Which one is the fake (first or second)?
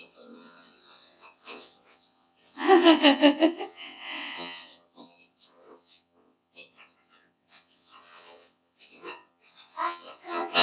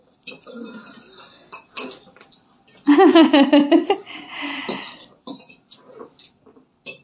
first